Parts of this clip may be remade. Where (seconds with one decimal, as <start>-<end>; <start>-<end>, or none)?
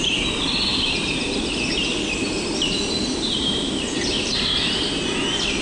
0.7-4.1